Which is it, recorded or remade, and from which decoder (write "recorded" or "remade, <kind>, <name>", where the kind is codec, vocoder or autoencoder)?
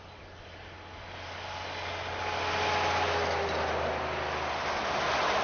recorded